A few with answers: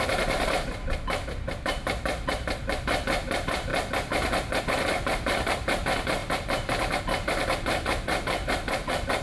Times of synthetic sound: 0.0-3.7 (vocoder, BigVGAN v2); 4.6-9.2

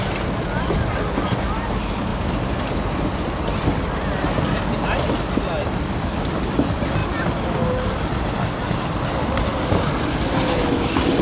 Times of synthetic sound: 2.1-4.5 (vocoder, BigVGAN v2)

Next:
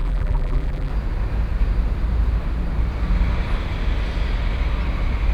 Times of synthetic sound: 0.0-0.9 (vocoder, BigVGAN v2)

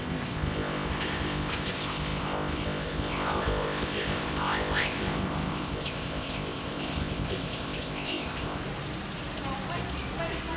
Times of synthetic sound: 0.0-8.6 (codec, ZipCodec)

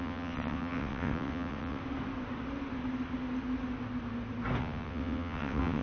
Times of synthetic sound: 0.0-1.8 (vocoder, WaveNeXt); 4.6-5.8